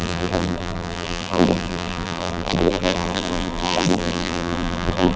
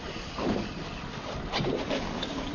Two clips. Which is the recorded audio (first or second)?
second